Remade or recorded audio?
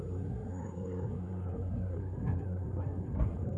remade